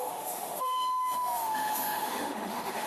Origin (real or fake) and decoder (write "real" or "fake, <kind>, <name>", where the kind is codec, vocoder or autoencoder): fake, autoencoder, DAC-VAE